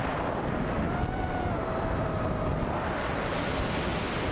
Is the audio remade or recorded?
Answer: recorded